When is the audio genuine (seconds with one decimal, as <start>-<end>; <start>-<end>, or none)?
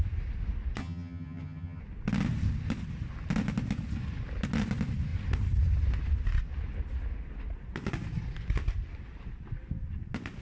0.0-0.8; 1.8-10.4